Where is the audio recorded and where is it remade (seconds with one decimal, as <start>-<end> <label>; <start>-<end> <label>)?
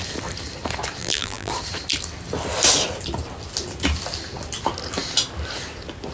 0.0-1.0 recorded; 1.0-1.5 remade; 1.5-6.1 recorded